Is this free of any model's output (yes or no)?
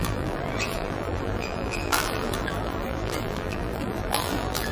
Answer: no